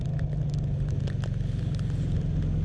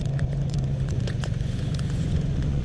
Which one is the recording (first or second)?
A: first